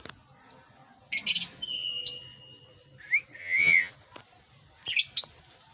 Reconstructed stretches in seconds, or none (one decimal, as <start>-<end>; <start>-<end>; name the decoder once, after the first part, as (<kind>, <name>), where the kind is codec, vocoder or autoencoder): 3.4-3.9 (vocoder, HiFi-GAN)